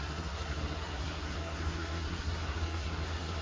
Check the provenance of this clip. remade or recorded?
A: remade